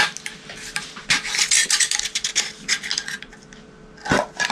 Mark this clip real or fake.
real